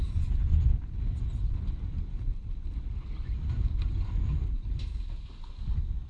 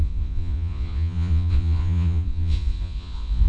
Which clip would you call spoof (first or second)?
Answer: second